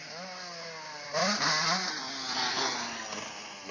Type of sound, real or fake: real